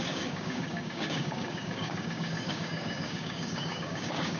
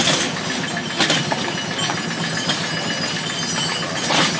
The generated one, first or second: first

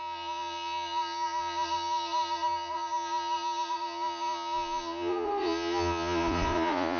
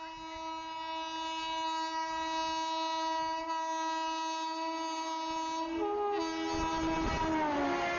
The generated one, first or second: first